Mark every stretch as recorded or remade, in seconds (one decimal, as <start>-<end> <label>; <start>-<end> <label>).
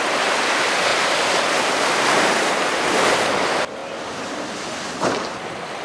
0.0-0.9 recorded; 0.9-2.8 remade; 2.8-5.8 recorded